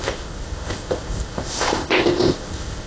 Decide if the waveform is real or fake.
fake